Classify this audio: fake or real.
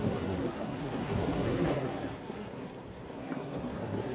fake